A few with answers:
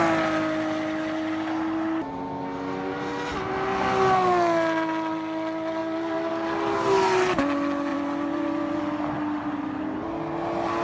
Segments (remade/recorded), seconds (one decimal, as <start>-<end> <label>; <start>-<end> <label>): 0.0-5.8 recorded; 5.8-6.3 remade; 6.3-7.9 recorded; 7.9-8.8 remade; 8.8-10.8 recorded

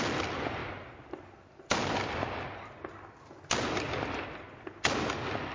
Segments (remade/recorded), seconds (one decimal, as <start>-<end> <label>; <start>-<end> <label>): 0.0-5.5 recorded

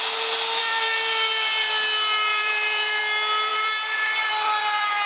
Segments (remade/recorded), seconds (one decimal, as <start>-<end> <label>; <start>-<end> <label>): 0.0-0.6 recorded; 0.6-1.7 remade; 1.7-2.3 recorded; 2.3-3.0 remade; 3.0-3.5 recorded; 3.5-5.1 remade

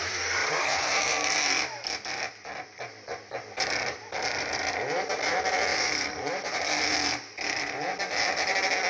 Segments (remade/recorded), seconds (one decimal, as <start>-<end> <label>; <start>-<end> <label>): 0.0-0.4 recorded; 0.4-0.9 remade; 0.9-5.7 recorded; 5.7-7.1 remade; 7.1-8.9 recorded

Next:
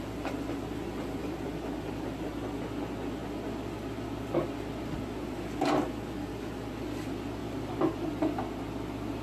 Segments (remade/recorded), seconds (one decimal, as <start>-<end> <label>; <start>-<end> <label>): 0.0-1.2 recorded; 1.2-1.9 remade; 1.9-7.4 recorded; 7.4-8.1 remade; 8.1-9.2 recorded

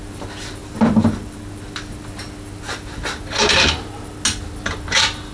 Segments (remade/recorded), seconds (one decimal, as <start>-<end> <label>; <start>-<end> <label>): 0.0-5.3 recorded